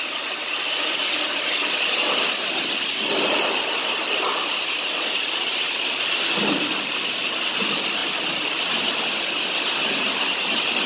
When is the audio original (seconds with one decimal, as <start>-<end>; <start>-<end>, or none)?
0.0-10.9